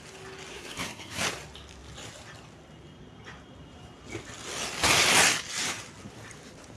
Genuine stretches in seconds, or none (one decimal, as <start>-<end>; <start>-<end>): 0.0-0.5; 1.2-6.8